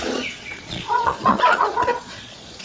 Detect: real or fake fake